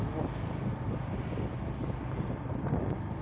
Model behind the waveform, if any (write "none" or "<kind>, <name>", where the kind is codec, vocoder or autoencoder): none